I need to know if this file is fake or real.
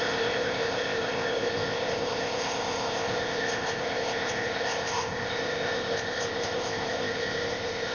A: fake